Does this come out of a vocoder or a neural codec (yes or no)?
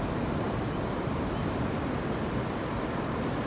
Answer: no